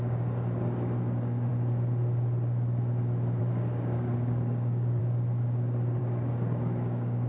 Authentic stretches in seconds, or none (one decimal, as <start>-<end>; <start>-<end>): 1.5-3.4; 5.0-6.0